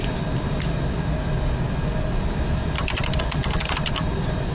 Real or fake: real